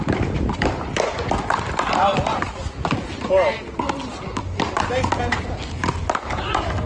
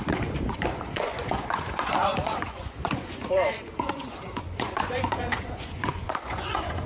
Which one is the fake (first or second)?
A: second